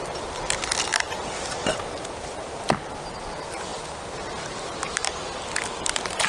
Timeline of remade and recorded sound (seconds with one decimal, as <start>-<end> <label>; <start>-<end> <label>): 0.0-6.3 recorded